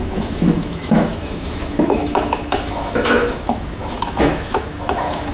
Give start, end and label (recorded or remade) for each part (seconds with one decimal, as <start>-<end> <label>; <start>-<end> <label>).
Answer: 0.0-5.3 remade